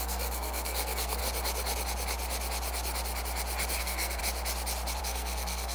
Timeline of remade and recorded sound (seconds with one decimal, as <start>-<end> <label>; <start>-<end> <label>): 0.0-1.2 remade; 1.2-3.8 recorded; 3.8-4.2 remade; 4.2-5.0 recorded; 5.0-5.7 remade